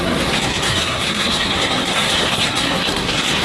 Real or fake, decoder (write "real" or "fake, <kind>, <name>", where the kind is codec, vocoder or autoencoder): fake, codec, SNAC